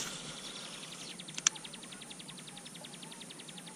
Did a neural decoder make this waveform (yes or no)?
yes